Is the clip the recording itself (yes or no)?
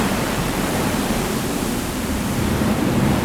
no